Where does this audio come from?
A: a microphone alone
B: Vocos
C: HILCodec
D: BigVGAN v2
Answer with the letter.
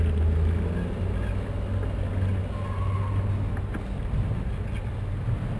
A